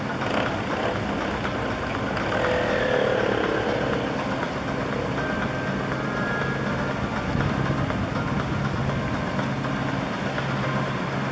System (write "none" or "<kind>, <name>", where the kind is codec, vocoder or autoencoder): none